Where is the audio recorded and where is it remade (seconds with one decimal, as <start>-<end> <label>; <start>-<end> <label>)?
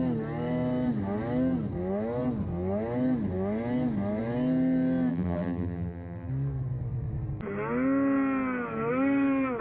0.0-5.1 recorded; 5.1-6.3 remade; 6.3-9.6 recorded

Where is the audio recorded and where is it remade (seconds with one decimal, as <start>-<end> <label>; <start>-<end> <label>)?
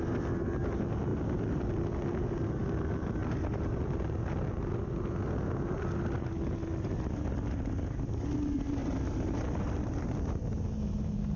0.0-1.1 recorded; 1.1-1.8 remade; 1.8-8.8 recorded; 8.8-10.1 remade; 10.1-11.4 recorded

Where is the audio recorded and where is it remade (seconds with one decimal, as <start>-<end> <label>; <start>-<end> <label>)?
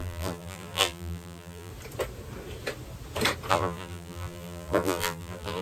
0.0-1.7 remade; 1.7-3.5 recorded; 3.5-5.6 remade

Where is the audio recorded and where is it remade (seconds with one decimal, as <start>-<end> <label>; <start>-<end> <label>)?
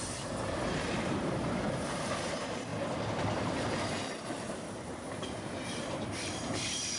0.0-2.7 remade; 2.7-3.7 recorded; 3.7-7.0 remade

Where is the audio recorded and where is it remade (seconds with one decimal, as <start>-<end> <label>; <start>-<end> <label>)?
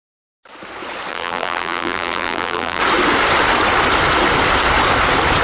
0.0-1.1 recorded; 1.1-2.8 remade; 2.8-5.4 recorded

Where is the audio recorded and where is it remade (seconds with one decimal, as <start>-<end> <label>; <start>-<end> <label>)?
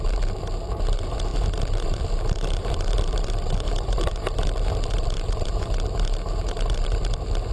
0.0-7.5 remade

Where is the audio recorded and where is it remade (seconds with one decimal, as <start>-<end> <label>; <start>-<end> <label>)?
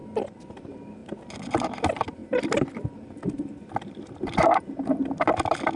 0.0-0.5 recorded; 0.5-1.0 remade; 1.0-1.8 recorded; 1.8-5.8 remade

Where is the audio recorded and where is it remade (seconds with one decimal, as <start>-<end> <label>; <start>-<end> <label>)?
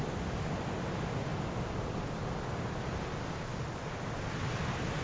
0.0-5.0 recorded